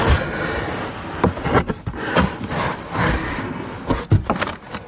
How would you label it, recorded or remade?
recorded